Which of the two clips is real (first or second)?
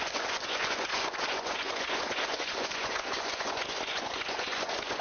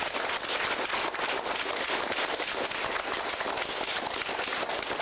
second